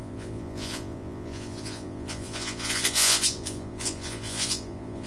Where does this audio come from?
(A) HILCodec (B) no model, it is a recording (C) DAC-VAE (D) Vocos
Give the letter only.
D